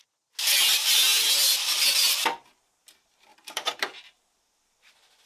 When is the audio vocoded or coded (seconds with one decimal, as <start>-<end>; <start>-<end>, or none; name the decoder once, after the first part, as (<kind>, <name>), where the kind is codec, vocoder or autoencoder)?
3.3-4.2 (vocoder, BigVGAN v2)